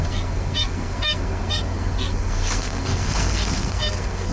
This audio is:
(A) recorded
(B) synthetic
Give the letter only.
B